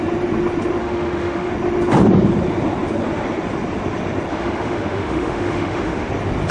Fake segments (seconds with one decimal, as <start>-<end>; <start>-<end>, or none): 0.8-1.5; 4.3-6.1